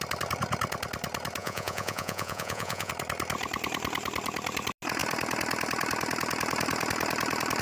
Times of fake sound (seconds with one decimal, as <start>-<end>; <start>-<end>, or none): 1.4-2.9